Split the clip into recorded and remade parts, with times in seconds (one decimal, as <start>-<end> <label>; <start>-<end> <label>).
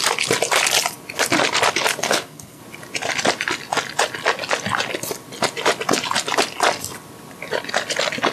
0.0-2.0 recorded; 2.0-2.6 remade; 2.6-8.3 recorded